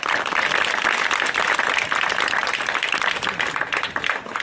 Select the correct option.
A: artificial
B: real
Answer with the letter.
B